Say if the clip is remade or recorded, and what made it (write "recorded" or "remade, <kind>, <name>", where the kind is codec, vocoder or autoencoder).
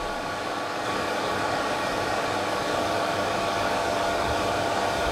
remade, codec, DAC